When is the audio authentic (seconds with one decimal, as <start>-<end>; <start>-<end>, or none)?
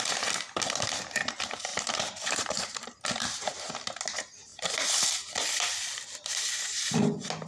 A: 0.0-1.7; 3.7-7.5